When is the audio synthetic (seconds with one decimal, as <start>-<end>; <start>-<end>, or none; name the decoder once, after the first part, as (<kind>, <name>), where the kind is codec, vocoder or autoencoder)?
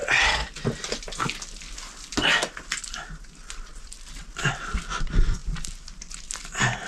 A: none